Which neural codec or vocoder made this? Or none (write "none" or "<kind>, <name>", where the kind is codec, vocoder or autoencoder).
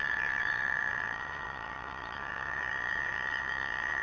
vocoder, WaveNeXt